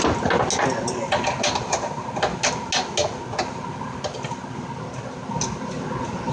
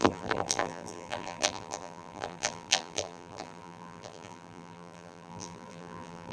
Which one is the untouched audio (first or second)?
first